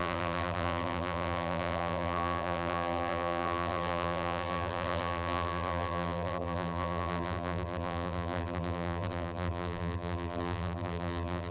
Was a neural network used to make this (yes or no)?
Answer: yes